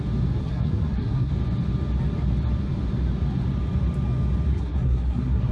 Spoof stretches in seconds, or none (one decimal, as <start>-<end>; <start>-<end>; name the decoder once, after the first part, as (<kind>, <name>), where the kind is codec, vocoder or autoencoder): 0.4-1.3 (codec, SNAC); 4.5-5.5